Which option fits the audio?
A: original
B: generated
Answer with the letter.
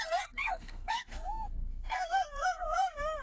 B